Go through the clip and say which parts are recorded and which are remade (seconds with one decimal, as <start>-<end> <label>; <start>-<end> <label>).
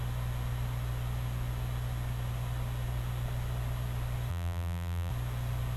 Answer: 0.0-4.3 recorded; 4.3-5.1 remade; 5.1-5.8 recorded